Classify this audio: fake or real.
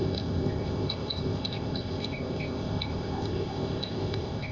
fake